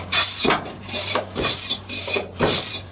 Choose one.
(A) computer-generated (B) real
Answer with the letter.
A